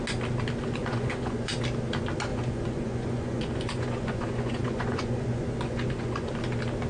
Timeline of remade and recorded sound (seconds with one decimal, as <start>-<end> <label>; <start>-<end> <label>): 0.0-0.8 recorded; 0.8-1.5 remade; 1.5-2.3 recorded; 2.3-6.3 remade; 6.3-6.9 recorded

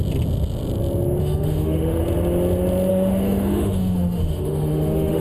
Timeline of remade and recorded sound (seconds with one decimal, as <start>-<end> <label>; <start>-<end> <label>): 0.0-1.2 recorded; 1.2-2.0 remade; 2.0-2.9 recorded; 2.9-5.2 remade